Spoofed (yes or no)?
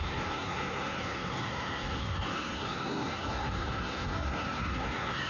yes